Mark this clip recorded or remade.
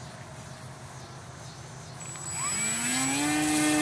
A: recorded